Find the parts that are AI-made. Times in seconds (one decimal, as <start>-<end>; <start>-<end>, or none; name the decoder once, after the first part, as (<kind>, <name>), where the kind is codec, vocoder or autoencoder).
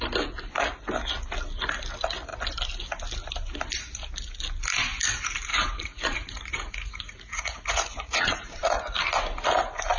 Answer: 5.5-8.8 (vocoder, Vocos)